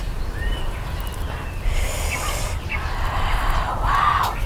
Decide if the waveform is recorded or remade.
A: recorded